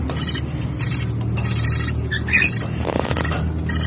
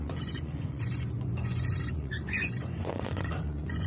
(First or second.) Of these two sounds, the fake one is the second